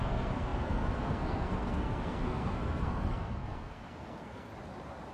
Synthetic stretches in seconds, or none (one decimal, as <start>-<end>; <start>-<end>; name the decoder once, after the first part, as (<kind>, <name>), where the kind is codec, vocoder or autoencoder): 0.0-4.5 (codec, SNAC)